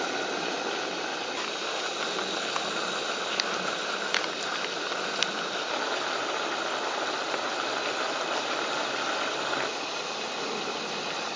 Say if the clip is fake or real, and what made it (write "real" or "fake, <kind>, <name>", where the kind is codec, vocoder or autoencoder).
real